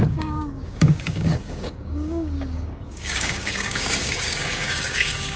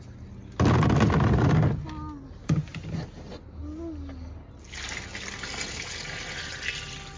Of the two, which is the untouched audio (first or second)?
second